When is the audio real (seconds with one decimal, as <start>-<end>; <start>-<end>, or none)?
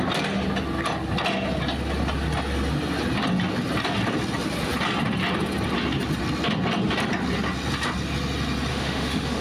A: 0.0-8.7